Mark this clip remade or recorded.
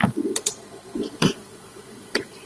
remade